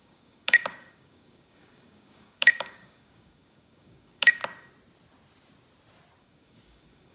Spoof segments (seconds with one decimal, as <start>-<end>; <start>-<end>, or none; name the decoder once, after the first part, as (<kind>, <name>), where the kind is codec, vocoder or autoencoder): 0.0-4.4 (codec, DAC); 6.2-7.1

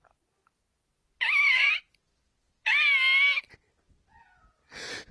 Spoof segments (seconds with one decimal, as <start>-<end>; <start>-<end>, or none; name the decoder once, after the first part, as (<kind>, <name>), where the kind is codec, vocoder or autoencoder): none